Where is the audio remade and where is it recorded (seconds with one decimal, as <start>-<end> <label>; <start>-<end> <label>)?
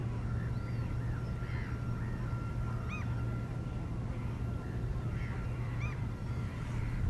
0.0-4.1 recorded; 4.1-7.1 remade